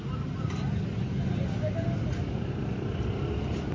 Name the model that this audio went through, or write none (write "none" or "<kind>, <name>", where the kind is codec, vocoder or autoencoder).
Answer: none